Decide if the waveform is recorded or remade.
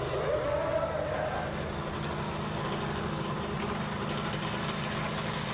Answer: recorded